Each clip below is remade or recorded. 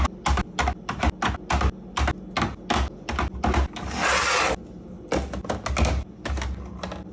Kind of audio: recorded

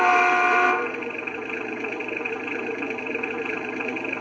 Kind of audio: remade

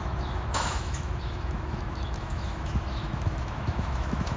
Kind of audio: remade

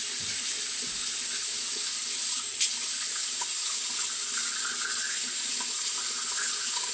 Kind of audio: recorded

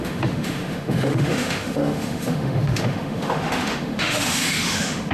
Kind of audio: remade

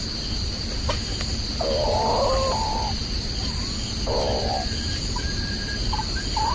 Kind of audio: recorded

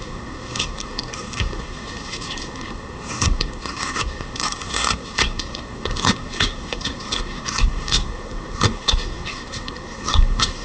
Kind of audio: remade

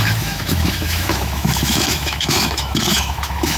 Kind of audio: remade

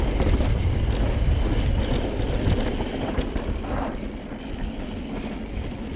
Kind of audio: recorded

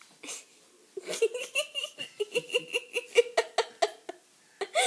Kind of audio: recorded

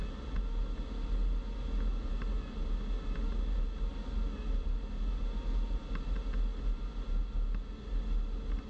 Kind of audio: recorded